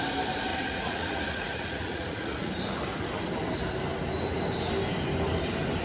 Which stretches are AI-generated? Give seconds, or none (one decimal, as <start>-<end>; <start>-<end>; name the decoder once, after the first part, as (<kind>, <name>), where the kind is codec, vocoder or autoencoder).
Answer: 0.5-2.5 (vocoder, Vocos)